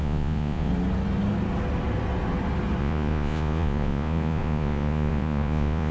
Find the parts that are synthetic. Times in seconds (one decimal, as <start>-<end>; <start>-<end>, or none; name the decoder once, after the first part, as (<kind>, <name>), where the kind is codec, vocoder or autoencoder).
0.0-0.7 (vocoder, Vocos); 2.8-5.9